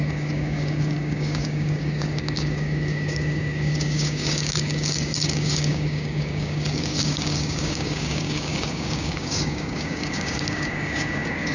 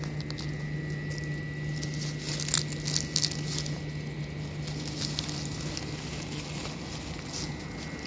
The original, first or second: second